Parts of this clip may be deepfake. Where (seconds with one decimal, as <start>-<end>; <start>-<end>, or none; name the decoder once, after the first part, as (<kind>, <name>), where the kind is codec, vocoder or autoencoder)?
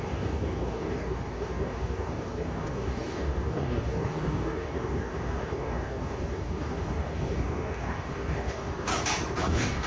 0.0-8.9 (codec, DAC); 9.4-9.9